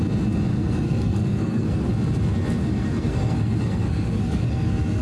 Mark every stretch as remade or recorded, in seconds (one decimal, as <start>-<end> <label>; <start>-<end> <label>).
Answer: 0.0-0.5 recorded; 0.5-1.9 remade; 1.9-2.6 recorded; 2.6-5.0 remade